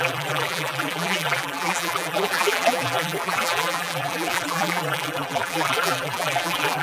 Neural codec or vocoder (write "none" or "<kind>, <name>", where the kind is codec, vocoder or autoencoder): vocoder, BigVGAN v2